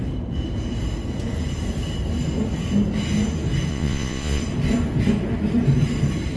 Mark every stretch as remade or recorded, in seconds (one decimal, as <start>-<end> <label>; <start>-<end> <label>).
0.0-3.7 recorded; 3.7-4.4 remade; 4.4-6.4 recorded